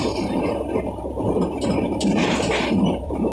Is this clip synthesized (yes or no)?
yes